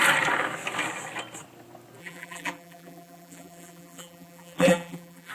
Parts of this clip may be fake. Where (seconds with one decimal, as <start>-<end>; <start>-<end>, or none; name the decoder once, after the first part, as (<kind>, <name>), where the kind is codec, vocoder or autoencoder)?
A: 2.0-5.3 (vocoder, BigVGAN v2)